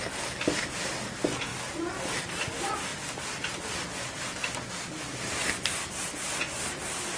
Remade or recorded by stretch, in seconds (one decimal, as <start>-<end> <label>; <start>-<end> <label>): 0.0-7.2 recorded